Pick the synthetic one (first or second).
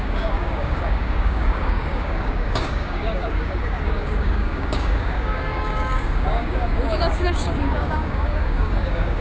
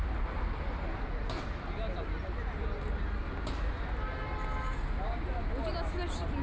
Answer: first